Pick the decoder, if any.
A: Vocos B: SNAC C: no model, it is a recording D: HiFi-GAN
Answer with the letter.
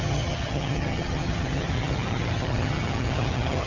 D